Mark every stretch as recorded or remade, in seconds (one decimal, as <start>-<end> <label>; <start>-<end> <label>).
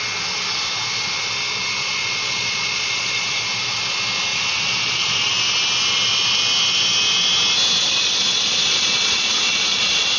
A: 0.0-1.8 recorded; 1.8-3.4 remade; 3.4-4.3 recorded; 4.3-5.3 remade; 5.3-7.8 recorded; 7.8-10.2 remade